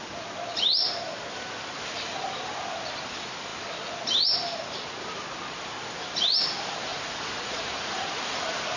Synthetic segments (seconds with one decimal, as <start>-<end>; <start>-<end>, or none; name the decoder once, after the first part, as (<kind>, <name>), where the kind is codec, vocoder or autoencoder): 6.9-8.4 (vocoder, Vocos)